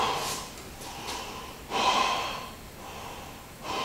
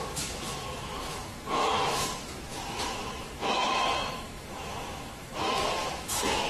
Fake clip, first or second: second